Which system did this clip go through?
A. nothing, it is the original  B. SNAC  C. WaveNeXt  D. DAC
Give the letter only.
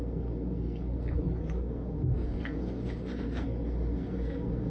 B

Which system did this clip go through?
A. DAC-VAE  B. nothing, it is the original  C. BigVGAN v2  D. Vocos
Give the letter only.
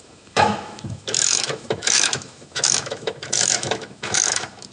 A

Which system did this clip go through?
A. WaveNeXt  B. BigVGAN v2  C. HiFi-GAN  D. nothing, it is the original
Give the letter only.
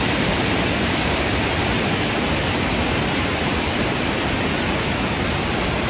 B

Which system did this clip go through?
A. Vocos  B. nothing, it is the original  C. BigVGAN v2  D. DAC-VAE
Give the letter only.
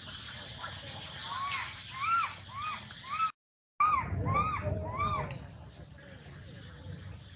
B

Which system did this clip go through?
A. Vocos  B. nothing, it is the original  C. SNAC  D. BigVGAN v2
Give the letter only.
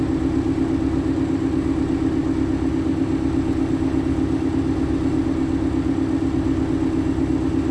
B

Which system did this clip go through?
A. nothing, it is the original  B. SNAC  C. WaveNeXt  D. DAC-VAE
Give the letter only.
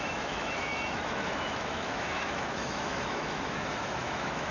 D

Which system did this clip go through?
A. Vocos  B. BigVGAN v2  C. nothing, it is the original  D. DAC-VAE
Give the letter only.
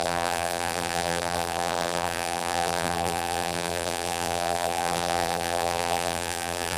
B